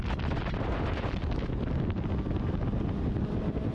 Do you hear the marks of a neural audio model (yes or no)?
no